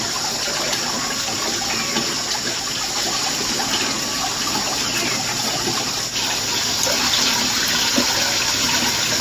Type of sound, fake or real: real